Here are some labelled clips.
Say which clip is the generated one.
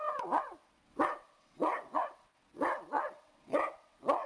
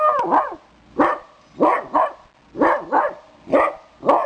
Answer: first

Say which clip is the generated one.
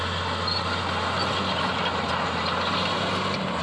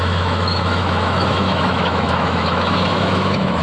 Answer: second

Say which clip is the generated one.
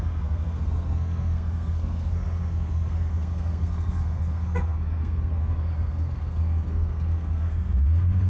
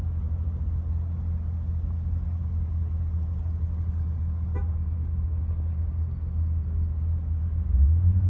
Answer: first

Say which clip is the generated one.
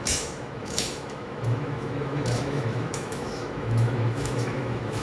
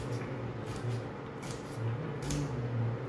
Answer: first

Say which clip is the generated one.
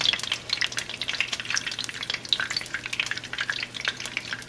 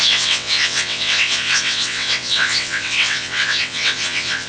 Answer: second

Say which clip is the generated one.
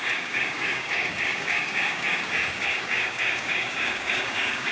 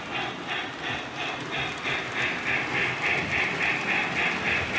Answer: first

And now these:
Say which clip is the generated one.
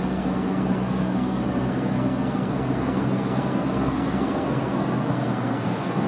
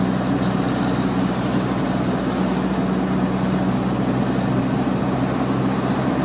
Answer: first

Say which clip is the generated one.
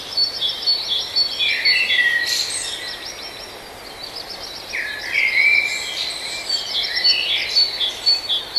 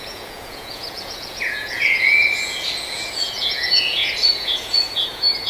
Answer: second